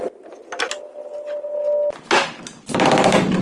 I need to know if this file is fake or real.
real